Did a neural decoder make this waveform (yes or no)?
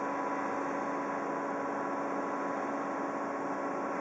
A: no